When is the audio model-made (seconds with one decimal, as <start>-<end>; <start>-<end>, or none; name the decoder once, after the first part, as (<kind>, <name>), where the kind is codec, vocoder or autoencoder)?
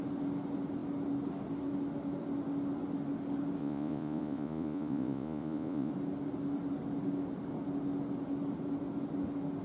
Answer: 3.6-5.9 (vocoder, Vocos)